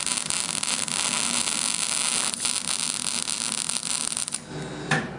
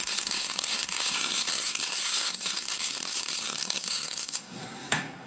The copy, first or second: second